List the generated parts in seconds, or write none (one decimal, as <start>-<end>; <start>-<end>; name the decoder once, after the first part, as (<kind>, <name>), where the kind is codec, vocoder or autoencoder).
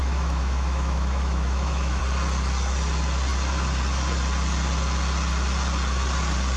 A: 0.0-2.0 (autoencoder, DAC-VAE)